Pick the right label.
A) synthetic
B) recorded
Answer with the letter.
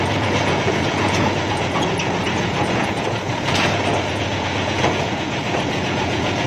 A